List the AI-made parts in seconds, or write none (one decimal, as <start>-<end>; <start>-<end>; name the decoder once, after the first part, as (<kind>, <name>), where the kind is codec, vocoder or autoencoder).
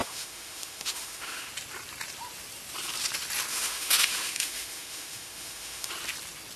0.0-1.5 (autoencoder, DAC-VAE); 3.5-5.9